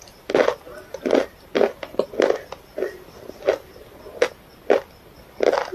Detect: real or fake real